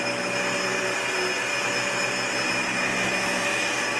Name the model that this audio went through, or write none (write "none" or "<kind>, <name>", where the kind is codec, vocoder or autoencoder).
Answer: none